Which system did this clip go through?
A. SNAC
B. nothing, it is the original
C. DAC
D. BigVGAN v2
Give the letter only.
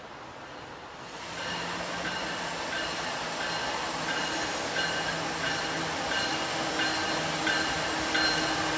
B